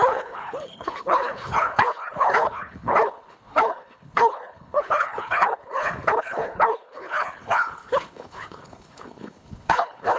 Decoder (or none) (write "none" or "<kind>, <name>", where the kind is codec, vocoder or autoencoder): codec, HILCodec